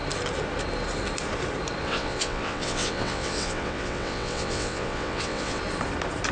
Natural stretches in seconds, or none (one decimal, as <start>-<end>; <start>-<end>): 0.0-1.8; 5.6-6.3

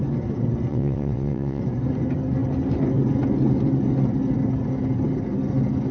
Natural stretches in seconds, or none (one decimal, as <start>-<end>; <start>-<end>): 0.0-0.7; 1.6-5.9

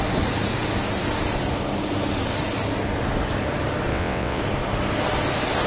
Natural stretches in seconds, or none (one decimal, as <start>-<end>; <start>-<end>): 0.0-3.9; 4.4-5.7

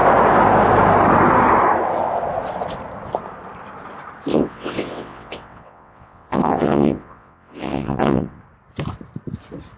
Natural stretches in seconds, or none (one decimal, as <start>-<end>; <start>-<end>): 0.0-4.3; 8.4-9.8